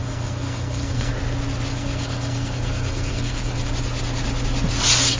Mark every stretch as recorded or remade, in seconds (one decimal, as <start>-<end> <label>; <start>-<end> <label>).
0.0-1.1 remade; 1.1-1.7 recorded; 1.7-3.7 remade; 3.7-5.2 recorded